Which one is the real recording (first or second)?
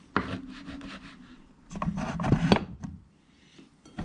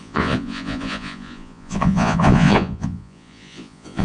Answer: first